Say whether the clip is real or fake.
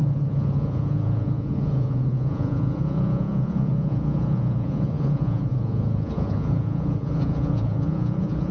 fake